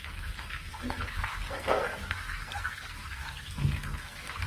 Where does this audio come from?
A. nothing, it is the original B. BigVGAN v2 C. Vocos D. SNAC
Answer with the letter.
D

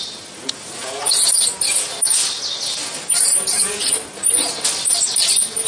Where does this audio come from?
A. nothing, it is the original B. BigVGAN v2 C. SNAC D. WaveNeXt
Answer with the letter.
A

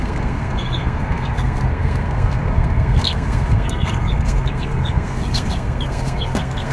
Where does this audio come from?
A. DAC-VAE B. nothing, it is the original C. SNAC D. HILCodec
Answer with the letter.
C